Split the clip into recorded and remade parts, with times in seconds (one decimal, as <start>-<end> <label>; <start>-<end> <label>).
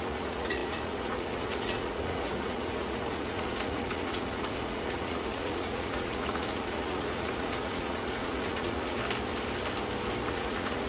0.0-9.0 remade; 9.0-10.3 recorded; 10.3-10.9 remade